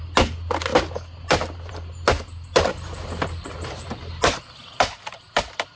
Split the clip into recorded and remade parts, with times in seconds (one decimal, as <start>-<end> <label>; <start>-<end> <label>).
0.0-5.8 recorded